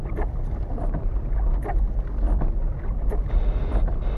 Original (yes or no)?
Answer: yes